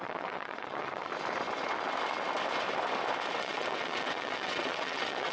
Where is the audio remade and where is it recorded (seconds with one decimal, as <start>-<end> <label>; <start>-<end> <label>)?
0.0-1.1 remade; 1.1-3.4 recorded; 3.4-5.3 remade